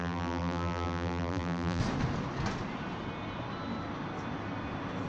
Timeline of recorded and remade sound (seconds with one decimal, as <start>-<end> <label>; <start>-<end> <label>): 0.0-1.8 remade; 1.8-5.1 recorded